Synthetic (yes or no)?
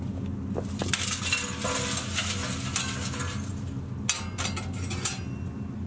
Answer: no